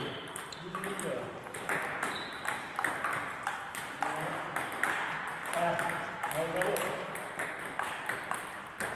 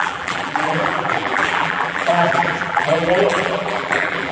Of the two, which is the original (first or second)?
first